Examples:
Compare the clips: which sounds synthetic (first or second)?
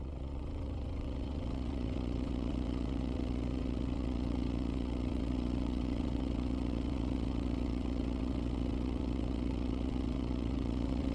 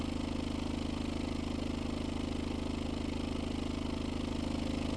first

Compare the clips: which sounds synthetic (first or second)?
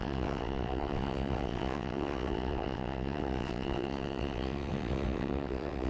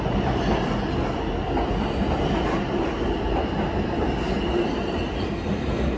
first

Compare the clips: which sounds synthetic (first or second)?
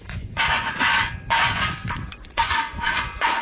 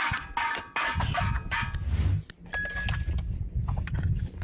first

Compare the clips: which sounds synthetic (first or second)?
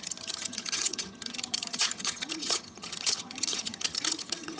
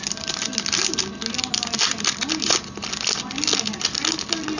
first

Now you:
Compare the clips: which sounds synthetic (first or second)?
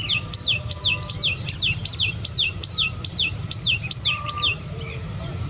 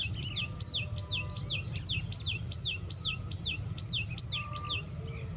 first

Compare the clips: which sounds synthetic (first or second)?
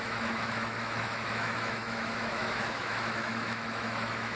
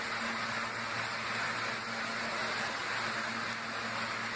first